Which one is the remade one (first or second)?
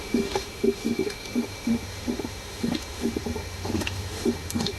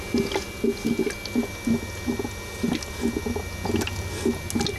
first